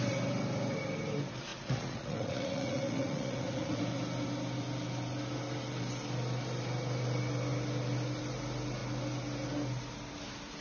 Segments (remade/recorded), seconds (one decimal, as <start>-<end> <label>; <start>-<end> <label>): 0.0-1.5 recorded; 1.5-3.8 remade; 3.8-10.6 recorded